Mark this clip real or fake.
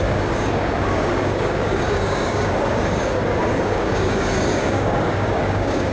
fake